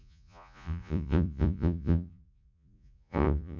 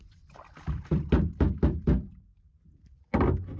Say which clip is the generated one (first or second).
first